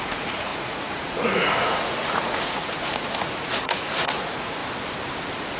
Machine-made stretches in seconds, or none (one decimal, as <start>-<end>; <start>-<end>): 0.0-4.6